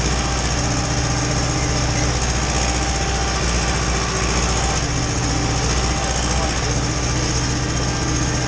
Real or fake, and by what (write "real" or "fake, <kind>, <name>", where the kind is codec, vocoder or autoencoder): real